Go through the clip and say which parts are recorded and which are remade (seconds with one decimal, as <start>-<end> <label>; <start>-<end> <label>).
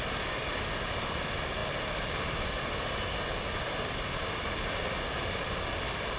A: 0.0-6.2 recorded